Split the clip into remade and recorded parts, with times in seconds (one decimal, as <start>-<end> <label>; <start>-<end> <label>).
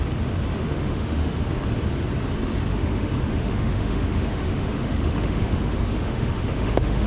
0.0-0.5 recorded; 0.5-1.4 remade; 1.4-2.7 recorded; 2.7-7.1 remade